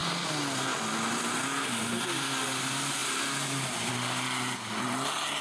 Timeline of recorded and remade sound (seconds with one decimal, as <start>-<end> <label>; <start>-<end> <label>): 0.0-5.4 recorded